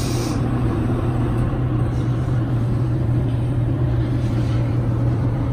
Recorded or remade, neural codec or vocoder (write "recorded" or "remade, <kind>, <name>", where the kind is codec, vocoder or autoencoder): remade, vocoder, BigVGAN v2